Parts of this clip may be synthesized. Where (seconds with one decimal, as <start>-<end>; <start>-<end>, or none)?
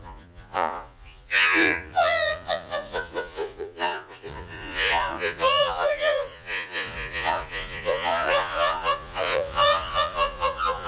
0.0-10.9